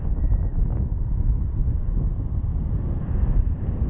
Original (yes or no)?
yes